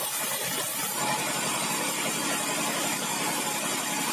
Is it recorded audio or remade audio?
remade